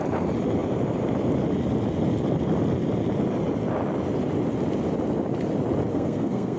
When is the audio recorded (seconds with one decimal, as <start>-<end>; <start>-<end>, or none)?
0.0-5.9